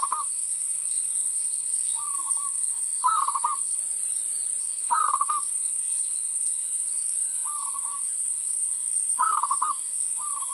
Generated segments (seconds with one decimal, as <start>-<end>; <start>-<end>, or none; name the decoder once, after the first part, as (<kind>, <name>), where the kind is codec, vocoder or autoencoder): 0.0-3.8 (codec, SNAC); 4.6-10.5